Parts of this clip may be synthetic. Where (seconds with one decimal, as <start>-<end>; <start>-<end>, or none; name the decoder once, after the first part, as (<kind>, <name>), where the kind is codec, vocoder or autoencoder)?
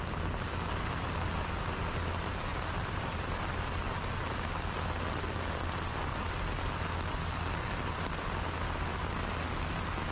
none